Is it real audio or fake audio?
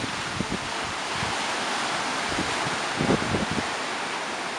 real